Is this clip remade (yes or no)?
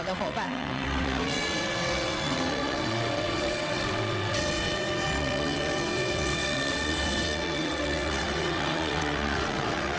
yes